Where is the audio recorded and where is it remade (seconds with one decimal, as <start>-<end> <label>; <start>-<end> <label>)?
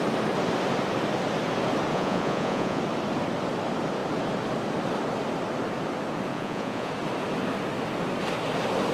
0.0-1.9 recorded; 1.9-2.8 remade; 2.8-6.3 recorded; 6.3-6.9 remade; 6.9-8.9 recorded